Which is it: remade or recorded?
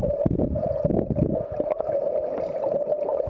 recorded